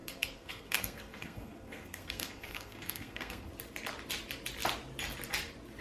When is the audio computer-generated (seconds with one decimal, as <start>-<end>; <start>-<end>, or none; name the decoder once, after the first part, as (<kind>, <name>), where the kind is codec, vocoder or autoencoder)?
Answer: 0.0-3.5 (codec, SNAC)